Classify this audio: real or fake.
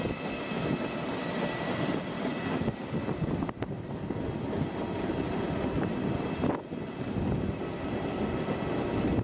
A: real